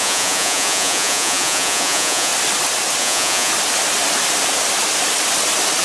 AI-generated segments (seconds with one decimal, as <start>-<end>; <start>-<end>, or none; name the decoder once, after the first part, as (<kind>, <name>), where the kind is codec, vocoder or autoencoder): 0.0-2.3 (vocoder, Vocos); 3.0-3.5